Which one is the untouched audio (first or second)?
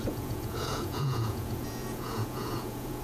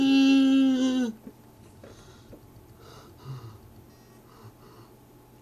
second